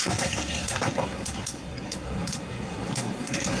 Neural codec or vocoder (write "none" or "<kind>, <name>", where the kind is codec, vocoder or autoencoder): codec, SNAC